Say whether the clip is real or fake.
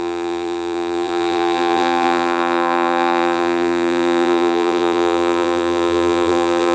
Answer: fake